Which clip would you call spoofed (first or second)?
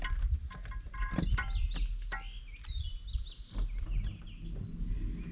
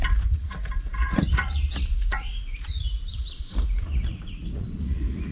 second